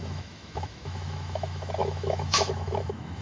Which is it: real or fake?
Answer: fake